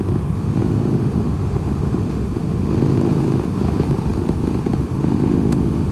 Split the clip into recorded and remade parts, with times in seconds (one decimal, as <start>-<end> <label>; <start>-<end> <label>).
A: 0.0-5.9 remade